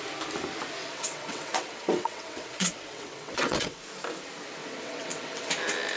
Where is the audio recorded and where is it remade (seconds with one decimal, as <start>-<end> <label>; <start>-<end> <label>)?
0.0-0.8 recorded; 0.8-3.8 remade; 3.8-4.6 recorded; 4.6-5.5 remade; 5.5-6.0 recorded